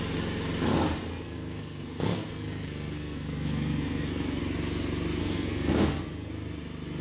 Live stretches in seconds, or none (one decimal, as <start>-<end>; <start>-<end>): 0.0-1.1; 4.4-5.2; 6.3-7.0